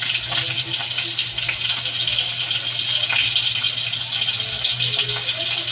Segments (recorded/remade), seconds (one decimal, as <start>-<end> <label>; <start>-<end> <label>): 0.0-5.7 recorded